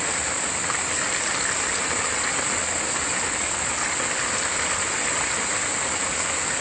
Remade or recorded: recorded